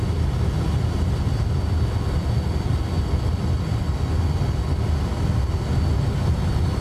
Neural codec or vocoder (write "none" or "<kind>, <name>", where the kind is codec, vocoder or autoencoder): none